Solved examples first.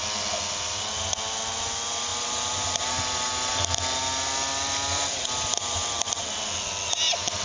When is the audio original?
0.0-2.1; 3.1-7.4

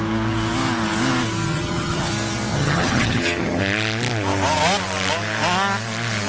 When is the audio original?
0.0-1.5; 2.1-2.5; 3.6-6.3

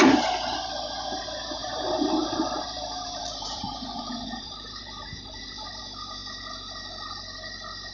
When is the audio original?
0.0-1.6; 5.8-7.9